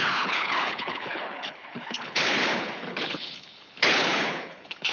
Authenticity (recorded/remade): remade